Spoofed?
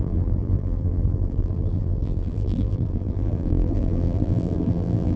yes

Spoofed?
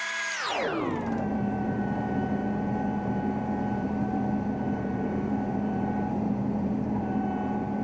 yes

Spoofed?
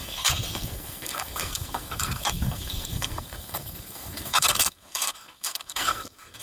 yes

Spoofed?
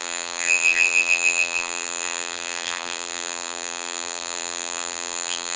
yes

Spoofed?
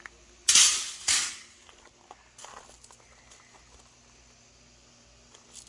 no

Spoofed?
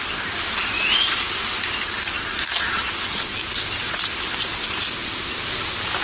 no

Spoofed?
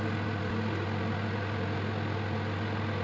no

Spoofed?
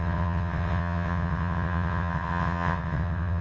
yes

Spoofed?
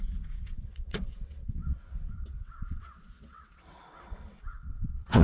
yes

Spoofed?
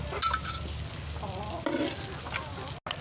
no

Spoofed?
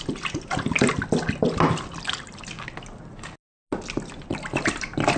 no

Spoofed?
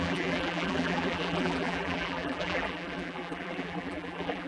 yes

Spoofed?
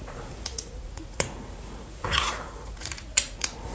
yes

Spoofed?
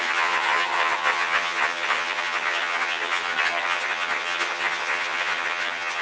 yes